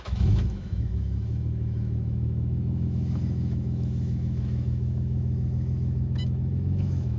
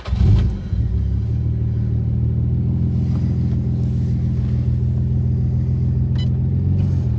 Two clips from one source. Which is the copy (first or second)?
first